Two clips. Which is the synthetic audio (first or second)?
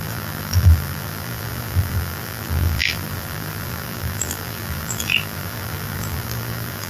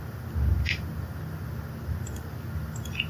first